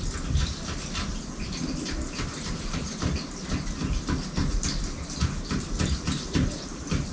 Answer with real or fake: real